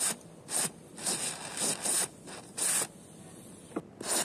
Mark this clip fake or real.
real